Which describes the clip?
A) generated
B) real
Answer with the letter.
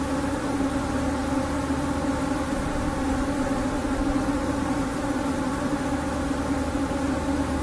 B